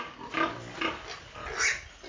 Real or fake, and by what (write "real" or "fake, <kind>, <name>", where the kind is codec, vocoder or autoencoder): real